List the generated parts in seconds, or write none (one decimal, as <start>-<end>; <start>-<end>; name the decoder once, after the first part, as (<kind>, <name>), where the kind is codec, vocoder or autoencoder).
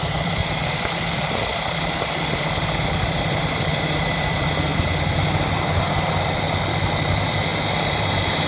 0.0-0.4 (vocoder, BigVGAN v2); 1.1-1.5; 4.1-7.5